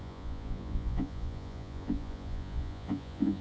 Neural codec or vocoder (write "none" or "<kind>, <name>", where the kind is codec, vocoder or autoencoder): vocoder, Vocos